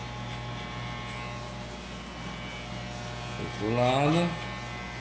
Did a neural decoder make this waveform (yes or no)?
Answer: no